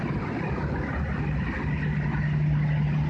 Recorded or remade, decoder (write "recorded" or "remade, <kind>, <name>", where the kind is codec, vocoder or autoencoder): recorded